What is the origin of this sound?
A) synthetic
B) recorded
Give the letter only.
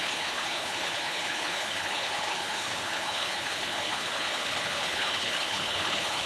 A